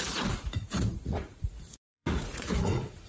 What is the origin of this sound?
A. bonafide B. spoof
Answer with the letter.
B